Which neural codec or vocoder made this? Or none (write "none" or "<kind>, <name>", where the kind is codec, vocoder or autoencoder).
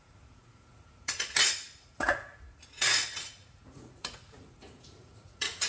vocoder, Vocos